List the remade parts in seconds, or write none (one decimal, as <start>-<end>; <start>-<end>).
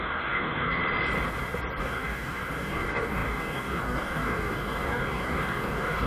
0.0-0.8; 1.8-6.1